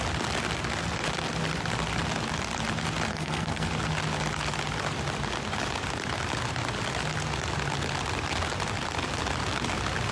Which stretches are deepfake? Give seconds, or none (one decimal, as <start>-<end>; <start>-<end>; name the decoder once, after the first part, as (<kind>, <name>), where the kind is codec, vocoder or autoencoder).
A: 3.1-3.7 (codec, SNAC)